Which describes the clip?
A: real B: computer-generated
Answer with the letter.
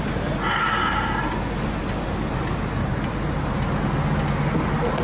A